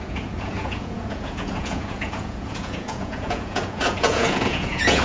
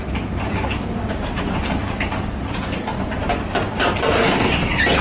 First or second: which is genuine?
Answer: second